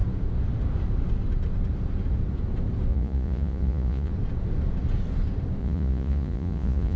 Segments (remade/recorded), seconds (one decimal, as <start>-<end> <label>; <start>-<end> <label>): 0.0-2.9 recorded; 2.9-4.1 remade; 4.1-5.6 recorded; 5.6-7.0 remade

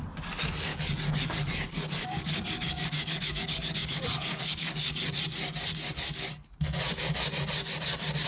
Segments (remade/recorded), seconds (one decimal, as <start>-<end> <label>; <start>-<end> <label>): 0.0-0.7 recorded; 0.7-5.2 remade; 5.2-8.3 recorded

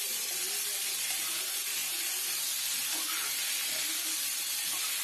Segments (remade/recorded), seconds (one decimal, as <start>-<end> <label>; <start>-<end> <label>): 0.0-1.8 recorded; 1.8-2.4 remade; 2.4-5.0 recorded